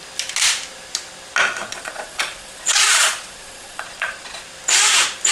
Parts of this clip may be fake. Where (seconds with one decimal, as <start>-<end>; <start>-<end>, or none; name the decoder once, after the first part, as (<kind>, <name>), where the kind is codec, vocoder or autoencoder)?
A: 1.7-4.4 (vocoder, Vocos)